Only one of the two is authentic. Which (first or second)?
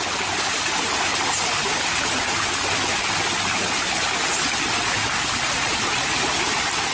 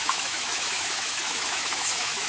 first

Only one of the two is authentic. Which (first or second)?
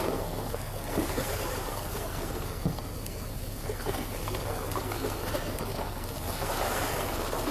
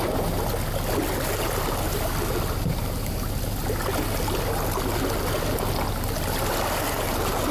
second